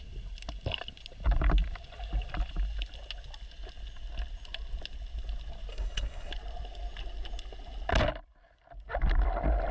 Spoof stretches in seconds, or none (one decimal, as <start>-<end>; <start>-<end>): 5.7-6.3